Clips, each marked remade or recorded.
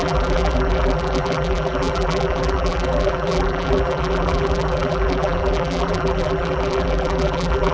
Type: remade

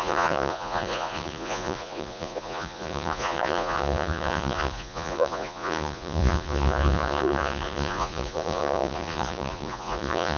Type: remade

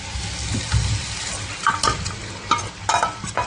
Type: recorded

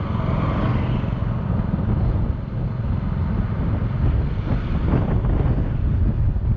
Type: recorded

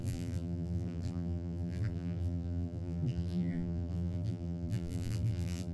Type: remade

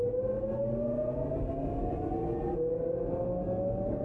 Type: recorded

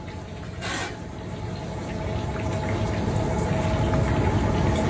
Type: recorded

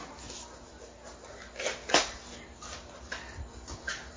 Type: recorded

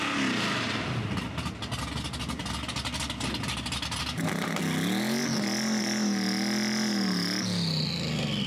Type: recorded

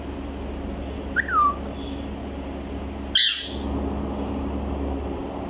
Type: recorded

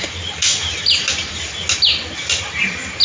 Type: recorded